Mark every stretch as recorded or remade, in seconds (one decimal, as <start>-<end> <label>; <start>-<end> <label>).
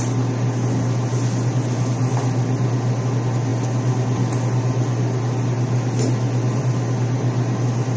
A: 0.0-8.0 recorded